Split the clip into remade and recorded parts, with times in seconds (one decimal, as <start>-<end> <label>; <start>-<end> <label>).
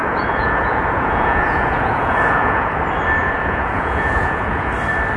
0.0-2.8 remade; 2.8-3.2 recorded; 3.2-4.7 remade; 4.7-5.2 recorded